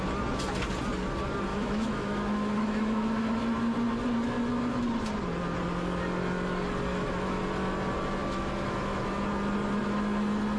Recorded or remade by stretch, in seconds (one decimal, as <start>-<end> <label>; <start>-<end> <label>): 0.0-1.5 recorded; 1.5-3.4 remade; 3.4-6.9 recorded; 6.9-7.4 remade; 7.4-8.2 recorded; 8.2-9.1 remade; 9.1-10.6 recorded